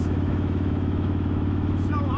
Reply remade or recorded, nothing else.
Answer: remade